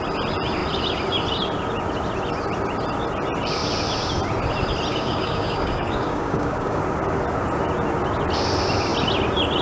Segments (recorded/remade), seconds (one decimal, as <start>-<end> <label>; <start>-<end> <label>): 0.0-4.9 recorded; 4.9-6.8 remade; 6.8-9.6 recorded